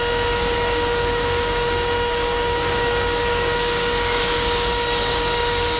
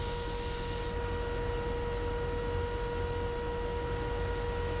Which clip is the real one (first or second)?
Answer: second